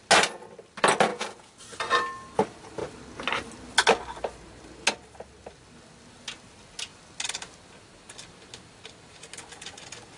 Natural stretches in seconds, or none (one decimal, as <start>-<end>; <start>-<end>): 0.0-1.1; 1.6-10.2